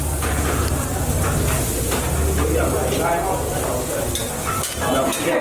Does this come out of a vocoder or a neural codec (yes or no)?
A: no